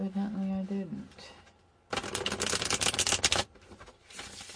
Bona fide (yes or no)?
yes